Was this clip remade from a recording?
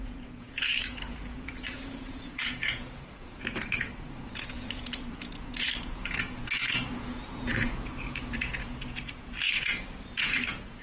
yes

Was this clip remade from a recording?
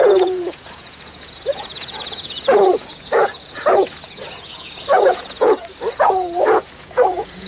yes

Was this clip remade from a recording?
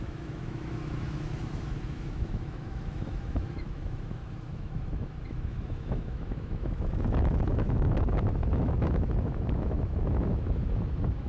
yes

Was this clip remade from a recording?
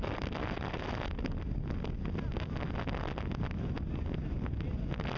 no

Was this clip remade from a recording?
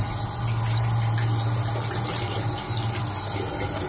no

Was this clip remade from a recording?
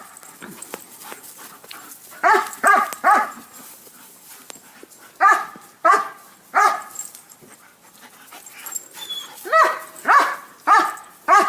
no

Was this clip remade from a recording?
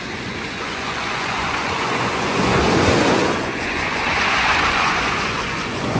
yes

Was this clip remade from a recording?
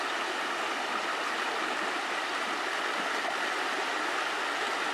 no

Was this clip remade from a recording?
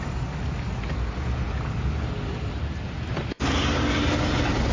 no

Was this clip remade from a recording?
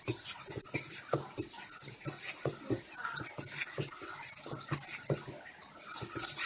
no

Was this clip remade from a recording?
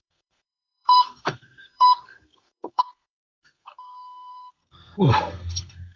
yes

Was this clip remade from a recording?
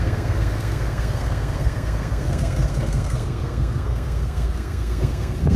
yes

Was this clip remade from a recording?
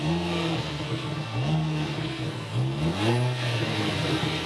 yes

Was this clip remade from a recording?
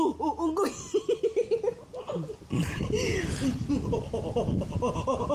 no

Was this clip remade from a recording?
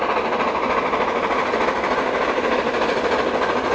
no